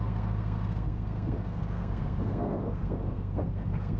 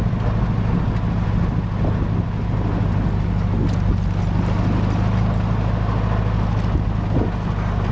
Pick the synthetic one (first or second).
first